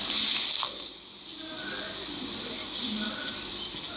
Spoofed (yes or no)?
no